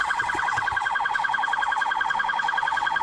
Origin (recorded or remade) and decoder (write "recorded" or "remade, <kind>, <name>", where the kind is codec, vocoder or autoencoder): remade, vocoder, WaveNeXt